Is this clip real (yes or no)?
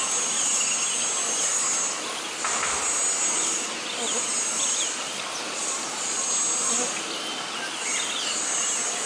yes